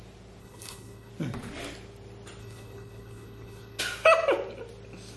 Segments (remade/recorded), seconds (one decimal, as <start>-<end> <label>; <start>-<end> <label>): 0.0-0.4 recorded; 0.4-1.1 remade; 1.1-2.4 recorded; 2.4-3.8 remade; 3.8-5.2 recorded